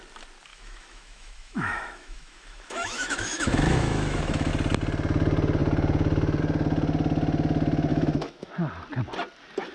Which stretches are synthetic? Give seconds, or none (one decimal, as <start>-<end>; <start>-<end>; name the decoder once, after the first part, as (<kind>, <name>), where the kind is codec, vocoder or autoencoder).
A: 0.5-4.5 (autoencoder, DAC-VAE); 7.9-8.5